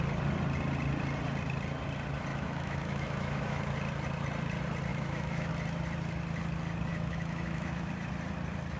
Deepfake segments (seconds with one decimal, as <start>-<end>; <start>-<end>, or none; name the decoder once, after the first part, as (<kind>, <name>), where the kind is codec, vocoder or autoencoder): 2.3-3.7 (autoencoder, DAC-VAE); 4.9-5.5; 6.9-7.9